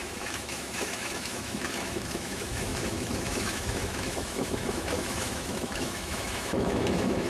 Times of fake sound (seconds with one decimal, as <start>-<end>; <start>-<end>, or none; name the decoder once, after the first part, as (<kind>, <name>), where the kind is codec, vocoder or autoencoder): 0.0-7.3 (autoencoder, DAC-VAE)